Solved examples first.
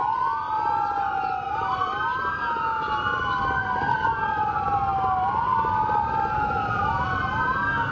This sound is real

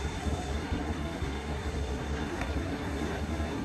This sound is fake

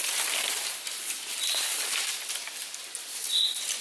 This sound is real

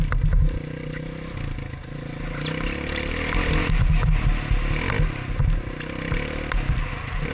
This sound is real